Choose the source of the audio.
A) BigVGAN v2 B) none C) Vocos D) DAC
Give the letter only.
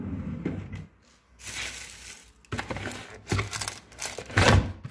B